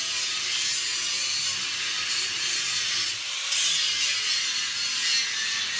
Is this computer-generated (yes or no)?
no